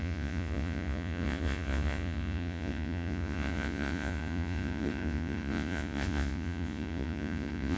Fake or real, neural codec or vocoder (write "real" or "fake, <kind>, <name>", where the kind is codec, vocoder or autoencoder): fake, vocoder, Vocos